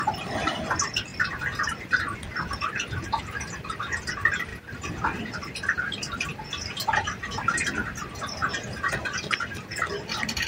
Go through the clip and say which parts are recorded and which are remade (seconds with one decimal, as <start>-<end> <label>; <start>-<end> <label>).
0.0-10.5 recorded